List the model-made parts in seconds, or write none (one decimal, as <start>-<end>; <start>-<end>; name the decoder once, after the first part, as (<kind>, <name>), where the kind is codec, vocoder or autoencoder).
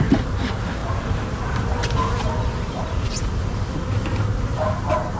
0.8-2.1 (vocoder, BigVGAN v2)